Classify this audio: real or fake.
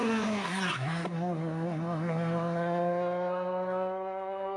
fake